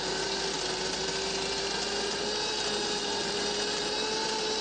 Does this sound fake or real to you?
real